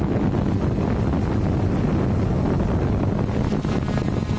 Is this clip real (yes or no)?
yes